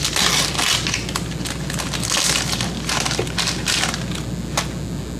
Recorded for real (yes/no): yes